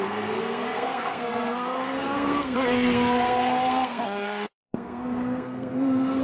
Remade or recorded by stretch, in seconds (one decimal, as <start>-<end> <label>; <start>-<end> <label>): 0.0-6.2 remade